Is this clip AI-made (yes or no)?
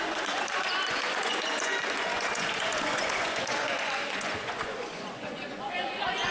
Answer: yes